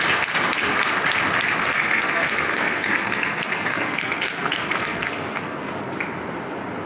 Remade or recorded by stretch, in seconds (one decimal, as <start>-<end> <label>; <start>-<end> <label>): 0.0-1.6 recorded; 1.6-5.7 remade; 5.7-6.9 recorded